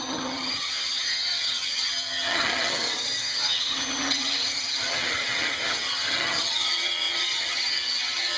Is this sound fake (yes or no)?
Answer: yes